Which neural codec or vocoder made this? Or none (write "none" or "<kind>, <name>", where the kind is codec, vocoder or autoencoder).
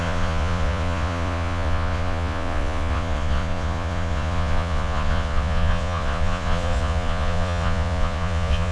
vocoder, Vocos